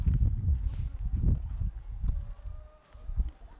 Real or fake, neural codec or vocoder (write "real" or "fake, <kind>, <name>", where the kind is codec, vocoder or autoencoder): real